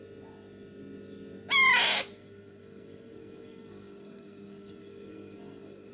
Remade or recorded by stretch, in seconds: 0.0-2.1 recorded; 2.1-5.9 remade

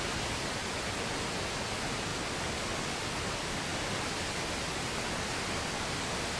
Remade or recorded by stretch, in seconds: 0.0-6.4 recorded

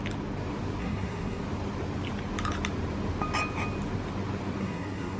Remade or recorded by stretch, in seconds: 0.0-0.8 recorded; 0.8-1.4 remade; 1.4-4.6 recorded; 4.6-5.2 remade

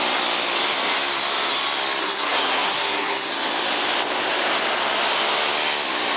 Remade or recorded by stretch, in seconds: 0.0-2.0 recorded; 2.0-3.3 remade; 3.3-6.2 recorded

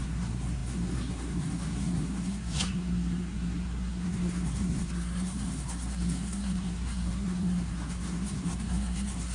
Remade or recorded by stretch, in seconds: 0.0-9.3 remade

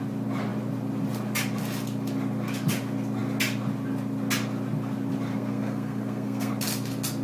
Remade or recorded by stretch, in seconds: 0.0-5.3 recorded; 5.3-6.5 remade; 6.5-7.2 recorded

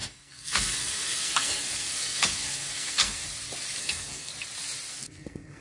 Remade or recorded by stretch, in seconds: 0.0-3.2 remade; 3.2-3.8 recorded; 3.8-4.3 remade; 4.3-4.9 recorded; 4.9-5.6 remade